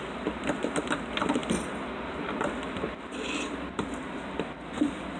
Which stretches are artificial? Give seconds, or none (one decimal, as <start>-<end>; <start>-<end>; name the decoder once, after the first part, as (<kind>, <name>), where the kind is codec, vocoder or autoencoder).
none